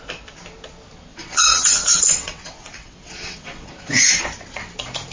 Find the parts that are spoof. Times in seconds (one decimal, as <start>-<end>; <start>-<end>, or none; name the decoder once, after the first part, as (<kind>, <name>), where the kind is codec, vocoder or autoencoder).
1.1-4.2 (vocoder, WaveNeXt)